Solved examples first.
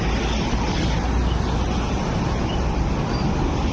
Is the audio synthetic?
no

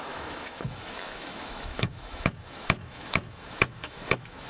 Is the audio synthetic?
yes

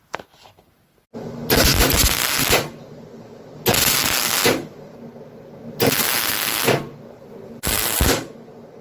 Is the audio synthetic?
no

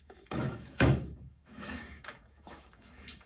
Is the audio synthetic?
yes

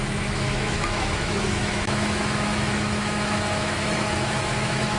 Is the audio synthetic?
yes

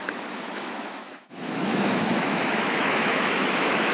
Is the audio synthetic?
yes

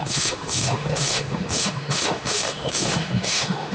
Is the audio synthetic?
yes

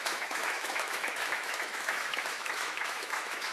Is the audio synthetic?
yes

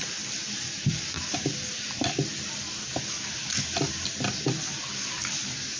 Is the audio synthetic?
no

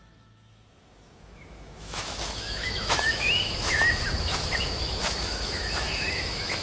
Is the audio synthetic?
yes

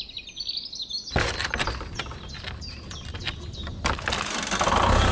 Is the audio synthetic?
no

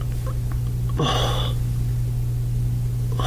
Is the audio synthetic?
no